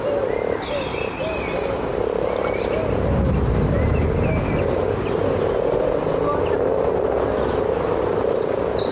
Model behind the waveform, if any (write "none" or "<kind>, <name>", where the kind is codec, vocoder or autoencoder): none